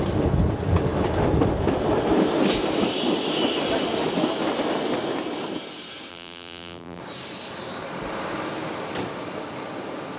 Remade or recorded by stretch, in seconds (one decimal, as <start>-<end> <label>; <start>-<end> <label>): 0.0-6.1 recorded; 6.1-7.0 remade; 7.0-10.2 recorded